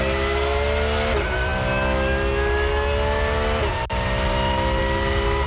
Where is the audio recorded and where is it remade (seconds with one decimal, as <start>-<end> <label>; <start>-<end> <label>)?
0.0-5.5 recorded

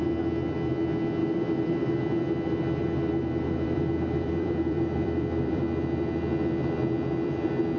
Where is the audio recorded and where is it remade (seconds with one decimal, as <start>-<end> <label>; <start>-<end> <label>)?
0.0-1.2 recorded; 1.2-2.0 remade; 2.0-2.8 recorded; 2.8-5.6 remade; 5.6-7.8 recorded

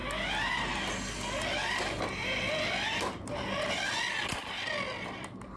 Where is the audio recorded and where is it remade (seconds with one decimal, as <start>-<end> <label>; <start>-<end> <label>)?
0.0-5.6 recorded

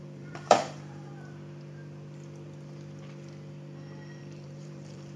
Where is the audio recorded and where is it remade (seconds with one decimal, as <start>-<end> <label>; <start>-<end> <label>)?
0.0-1.1 remade; 1.1-4.2 recorded; 4.2-5.2 remade

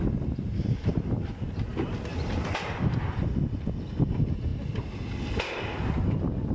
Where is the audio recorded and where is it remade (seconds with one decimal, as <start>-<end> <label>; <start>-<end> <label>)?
0.0-2.1 recorded; 2.1-2.8 remade; 2.8-6.5 recorded

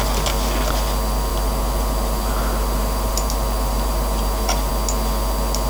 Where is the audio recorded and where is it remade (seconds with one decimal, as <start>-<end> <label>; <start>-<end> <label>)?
0.0-1.3 recorded; 1.3-4.7 remade; 4.7-5.7 recorded